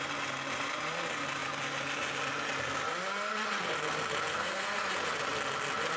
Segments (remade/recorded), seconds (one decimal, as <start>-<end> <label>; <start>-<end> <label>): 0.0-4.3 recorded; 4.3-4.8 remade; 4.8-6.0 recorded